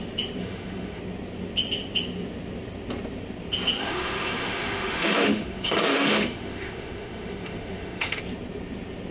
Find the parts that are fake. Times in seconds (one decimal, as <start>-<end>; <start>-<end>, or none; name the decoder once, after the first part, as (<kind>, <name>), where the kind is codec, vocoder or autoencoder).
0.4-1.0 (autoencoder, DAC-VAE); 3.8-8.2